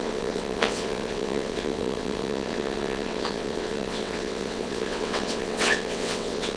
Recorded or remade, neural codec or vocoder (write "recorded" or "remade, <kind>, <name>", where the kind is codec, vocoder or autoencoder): remade, vocoder, WaveNeXt